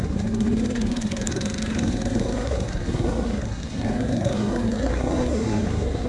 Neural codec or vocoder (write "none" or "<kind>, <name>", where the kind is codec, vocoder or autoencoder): codec, SNAC